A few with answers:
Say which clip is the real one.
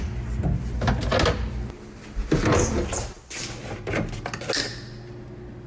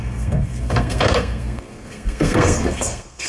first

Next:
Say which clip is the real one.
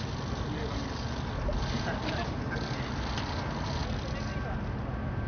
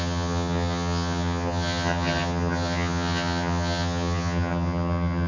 first